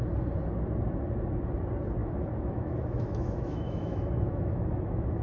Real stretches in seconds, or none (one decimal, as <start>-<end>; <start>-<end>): 0.0-2.0